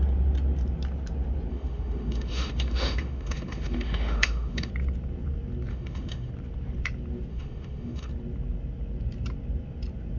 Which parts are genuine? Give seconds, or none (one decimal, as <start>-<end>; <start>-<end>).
0.0-1.5; 4.7-5.7; 6.3-7.3; 8.1-10.2